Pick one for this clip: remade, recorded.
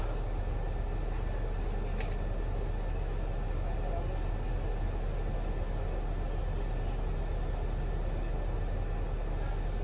recorded